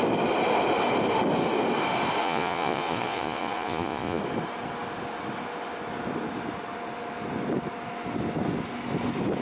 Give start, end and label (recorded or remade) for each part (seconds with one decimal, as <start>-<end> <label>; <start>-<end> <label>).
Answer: 0.0-2.2 recorded; 2.2-4.2 remade; 4.2-9.4 recorded